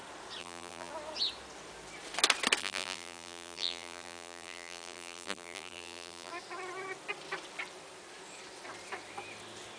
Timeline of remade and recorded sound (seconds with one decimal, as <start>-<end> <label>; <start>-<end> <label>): 0.0-0.4 recorded; 0.4-0.9 remade; 0.9-2.6 recorded; 2.6-6.3 remade; 6.3-9.8 recorded